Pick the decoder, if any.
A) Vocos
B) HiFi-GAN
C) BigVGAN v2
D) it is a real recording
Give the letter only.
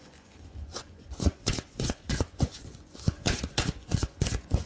A